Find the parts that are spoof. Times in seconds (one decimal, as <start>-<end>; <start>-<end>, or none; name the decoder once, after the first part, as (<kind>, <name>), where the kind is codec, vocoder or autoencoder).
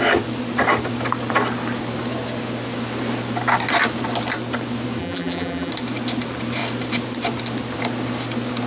5.0-5.7 (vocoder, BigVGAN v2)